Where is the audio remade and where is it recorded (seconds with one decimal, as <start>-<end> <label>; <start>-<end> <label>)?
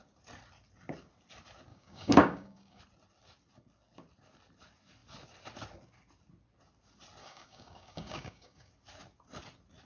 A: 0.0-1.7 recorded; 1.7-2.8 remade; 2.8-7.2 recorded; 7.2-8.7 remade; 8.7-9.9 recorded